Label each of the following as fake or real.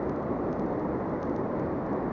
real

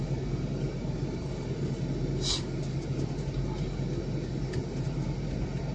real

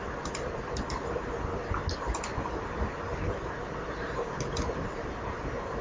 real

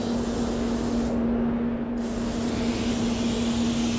real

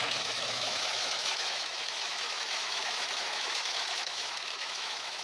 fake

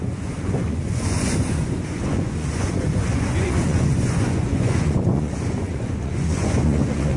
fake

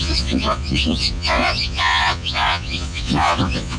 fake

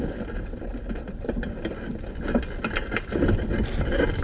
real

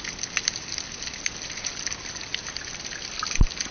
real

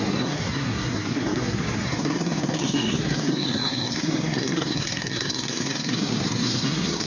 fake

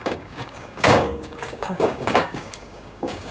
fake